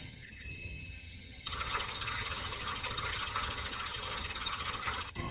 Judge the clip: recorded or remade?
remade